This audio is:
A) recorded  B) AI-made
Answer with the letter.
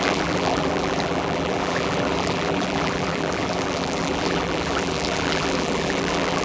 B